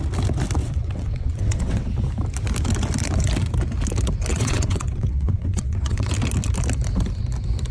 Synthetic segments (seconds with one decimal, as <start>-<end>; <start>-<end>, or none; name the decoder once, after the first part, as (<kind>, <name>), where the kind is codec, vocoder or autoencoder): 0.6-1.9 (vocoder, WaveNeXt); 4.3-6.1